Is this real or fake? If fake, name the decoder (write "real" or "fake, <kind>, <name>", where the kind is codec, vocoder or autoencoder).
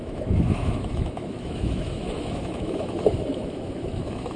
fake, autoencoder, DAC-VAE